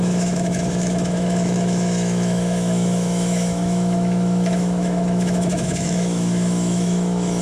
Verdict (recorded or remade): remade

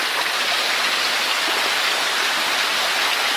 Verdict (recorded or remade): recorded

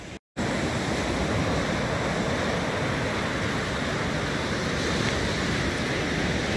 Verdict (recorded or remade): recorded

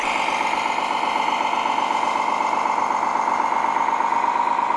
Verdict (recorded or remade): recorded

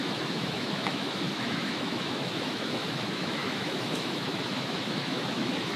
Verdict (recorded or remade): remade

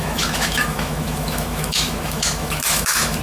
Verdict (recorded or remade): remade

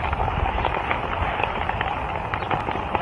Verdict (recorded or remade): recorded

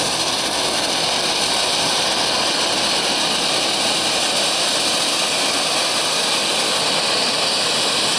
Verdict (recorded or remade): recorded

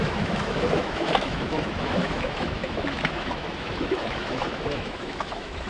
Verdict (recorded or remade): remade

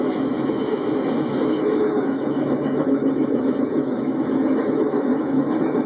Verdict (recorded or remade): remade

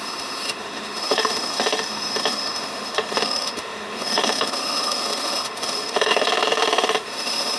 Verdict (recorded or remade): remade